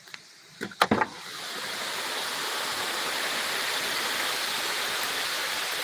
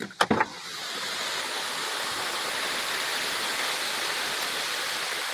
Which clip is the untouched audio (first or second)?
second